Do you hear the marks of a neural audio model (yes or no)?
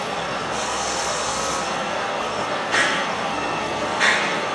yes